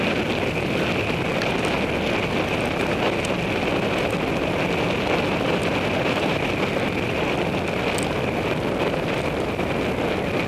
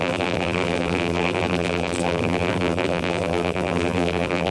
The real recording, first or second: first